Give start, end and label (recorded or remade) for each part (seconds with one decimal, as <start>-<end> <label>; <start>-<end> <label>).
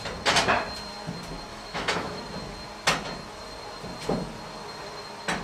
0.0-1.5 recorded; 1.5-2.2 remade; 2.2-5.4 recorded